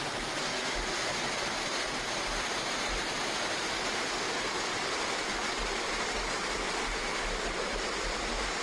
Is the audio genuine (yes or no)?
yes